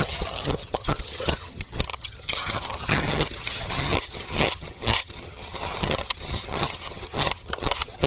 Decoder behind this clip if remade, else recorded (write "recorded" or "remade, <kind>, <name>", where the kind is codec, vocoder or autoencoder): remade, vocoder, HiFi-GAN